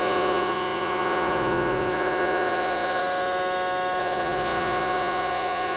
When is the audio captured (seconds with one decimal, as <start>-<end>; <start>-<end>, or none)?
3.0-4.0